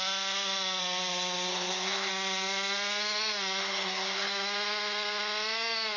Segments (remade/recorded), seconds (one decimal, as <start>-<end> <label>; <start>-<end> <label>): 0.0-1.5 recorded; 1.5-2.1 remade; 2.1-3.6 recorded; 3.6-4.3 remade; 4.3-6.0 recorded